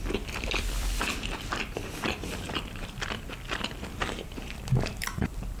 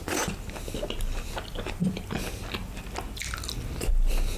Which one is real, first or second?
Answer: second